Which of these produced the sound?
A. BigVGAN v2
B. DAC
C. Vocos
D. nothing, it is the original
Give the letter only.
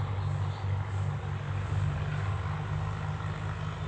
D